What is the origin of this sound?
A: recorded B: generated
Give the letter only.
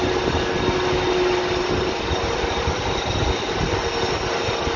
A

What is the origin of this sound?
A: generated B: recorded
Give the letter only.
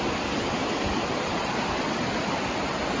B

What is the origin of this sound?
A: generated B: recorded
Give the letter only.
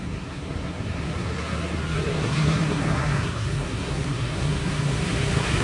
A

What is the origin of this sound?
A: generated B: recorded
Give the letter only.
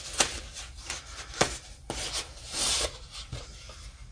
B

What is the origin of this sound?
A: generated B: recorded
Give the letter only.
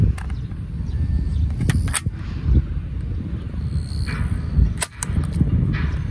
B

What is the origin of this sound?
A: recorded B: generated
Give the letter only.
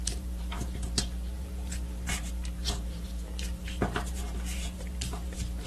B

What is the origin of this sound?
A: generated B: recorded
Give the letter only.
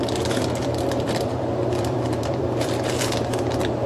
A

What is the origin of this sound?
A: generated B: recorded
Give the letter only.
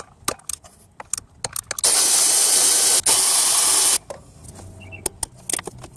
B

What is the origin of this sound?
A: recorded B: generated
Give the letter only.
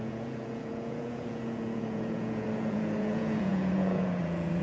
B